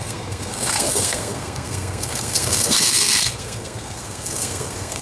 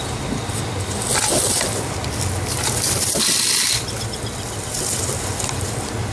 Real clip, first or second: second